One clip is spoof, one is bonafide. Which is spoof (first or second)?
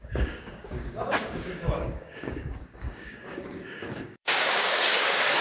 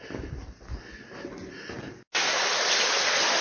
first